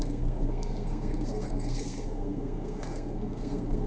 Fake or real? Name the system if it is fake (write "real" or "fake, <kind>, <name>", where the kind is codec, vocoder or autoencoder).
fake, codec, SNAC